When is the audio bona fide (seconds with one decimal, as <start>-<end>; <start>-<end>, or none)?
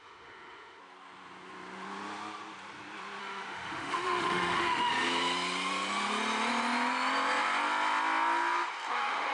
0.8-3.2; 4.9-8.9